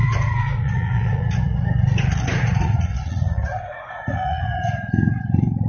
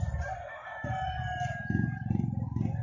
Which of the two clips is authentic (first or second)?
second